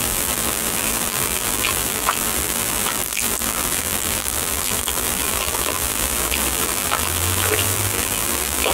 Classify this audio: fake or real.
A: fake